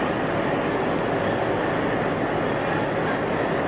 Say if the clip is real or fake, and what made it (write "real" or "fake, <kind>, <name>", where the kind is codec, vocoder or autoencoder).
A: real